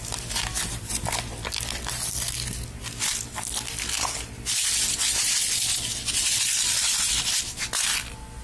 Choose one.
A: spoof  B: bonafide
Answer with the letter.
B